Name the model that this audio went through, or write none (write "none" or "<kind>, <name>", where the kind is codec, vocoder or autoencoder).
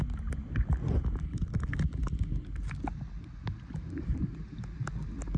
none